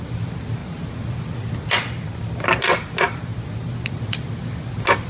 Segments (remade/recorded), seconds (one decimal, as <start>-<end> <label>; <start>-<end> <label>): 0.0-5.1 recorded